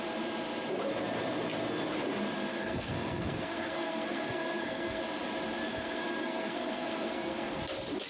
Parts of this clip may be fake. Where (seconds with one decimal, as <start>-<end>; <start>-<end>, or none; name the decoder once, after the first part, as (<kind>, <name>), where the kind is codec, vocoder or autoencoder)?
2.5-5.0 (codec, SNAC); 5.7-7.6